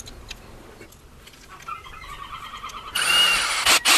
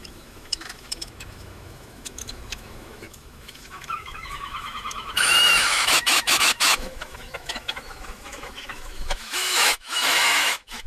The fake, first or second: second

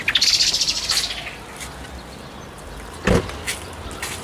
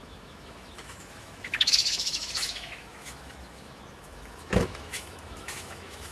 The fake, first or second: second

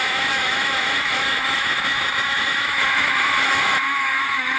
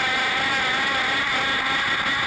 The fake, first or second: first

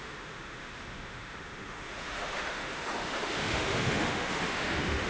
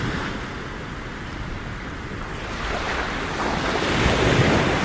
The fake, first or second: first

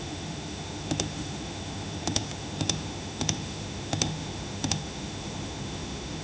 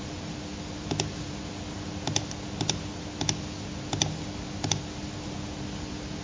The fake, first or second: first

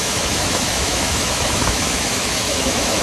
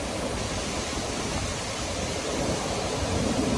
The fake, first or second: first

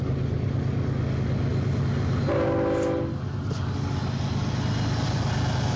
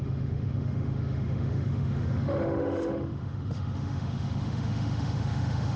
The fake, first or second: second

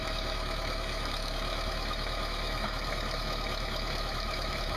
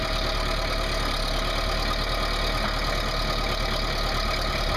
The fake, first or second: first